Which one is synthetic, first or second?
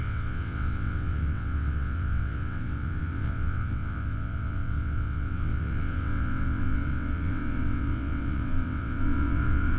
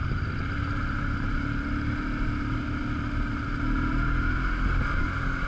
first